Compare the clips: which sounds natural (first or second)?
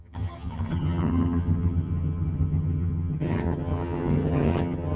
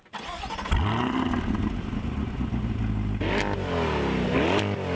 second